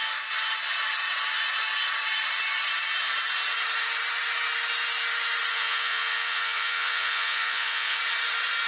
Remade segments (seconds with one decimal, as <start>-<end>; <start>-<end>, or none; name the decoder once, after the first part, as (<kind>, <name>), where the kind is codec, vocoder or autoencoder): 5.5-8.0 (vocoder, Vocos)